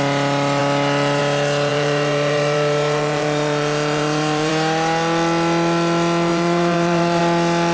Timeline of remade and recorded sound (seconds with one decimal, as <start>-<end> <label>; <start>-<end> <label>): 0.0-1.7 recorded; 1.7-4.5 remade; 4.5-6.3 recorded; 6.3-7.2 remade; 7.2-7.7 recorded